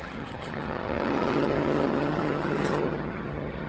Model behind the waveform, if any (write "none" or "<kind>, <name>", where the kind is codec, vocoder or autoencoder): vocoder, HiFi-GAN